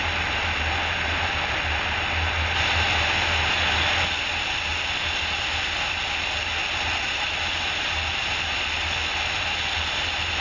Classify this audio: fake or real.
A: real